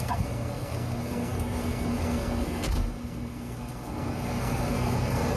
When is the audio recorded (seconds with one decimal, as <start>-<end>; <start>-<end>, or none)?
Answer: none